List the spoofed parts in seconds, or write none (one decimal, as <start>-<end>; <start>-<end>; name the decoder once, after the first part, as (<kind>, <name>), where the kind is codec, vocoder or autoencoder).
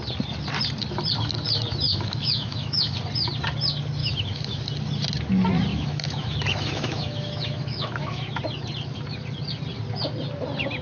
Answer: 1.9-3.0 (autoencoder, DAC-VAE); 4.0-4.6; 5.7-8.4